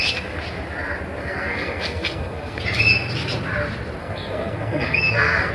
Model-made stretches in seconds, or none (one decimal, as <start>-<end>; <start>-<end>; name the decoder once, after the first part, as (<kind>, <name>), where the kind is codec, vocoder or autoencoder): 1.2-2.6 (codec, SNAC); 4.0-5.5